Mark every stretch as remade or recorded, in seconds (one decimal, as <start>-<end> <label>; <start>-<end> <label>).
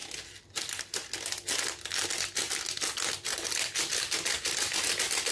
0.0-5.3 recorded